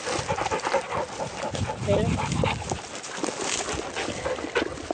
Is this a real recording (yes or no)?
yes